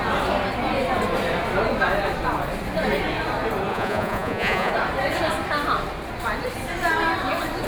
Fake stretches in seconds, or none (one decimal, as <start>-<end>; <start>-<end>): 3.7-4.7